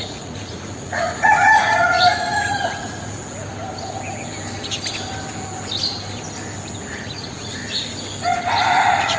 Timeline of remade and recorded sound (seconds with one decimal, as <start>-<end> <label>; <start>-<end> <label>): 0.0-3.2 remade; 3.2-6.9 recorded; 6.9-7.6 remade; 7.6-8.6 recorded; 8.6-9.2 remade